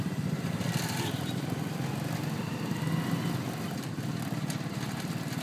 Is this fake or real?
real